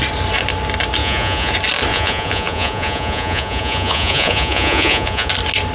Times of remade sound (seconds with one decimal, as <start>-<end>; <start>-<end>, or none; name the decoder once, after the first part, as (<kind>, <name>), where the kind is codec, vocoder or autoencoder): 1.0-1.5 (vocoder, Vocos); 1.9-5.3